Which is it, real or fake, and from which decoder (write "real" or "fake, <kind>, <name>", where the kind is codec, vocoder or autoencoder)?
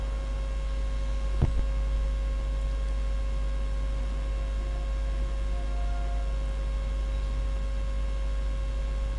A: real